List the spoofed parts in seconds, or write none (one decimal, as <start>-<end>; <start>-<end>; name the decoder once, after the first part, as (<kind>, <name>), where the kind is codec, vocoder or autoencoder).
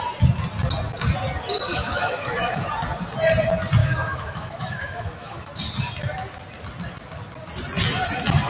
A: 1.7-2.7 (autoencoder, DAC-VAE); 3.8-5.6